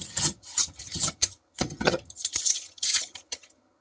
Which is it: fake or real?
fake